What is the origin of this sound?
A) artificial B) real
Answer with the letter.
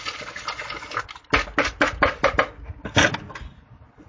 B